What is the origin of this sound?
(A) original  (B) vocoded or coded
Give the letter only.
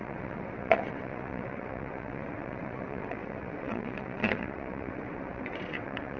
B